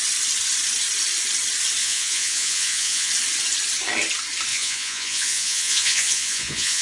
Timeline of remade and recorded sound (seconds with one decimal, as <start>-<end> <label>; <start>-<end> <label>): 0.0-1.8 recorded; 1.8-3.1 remade; 3.1-4.5 recorded; 4.5-6.8 remade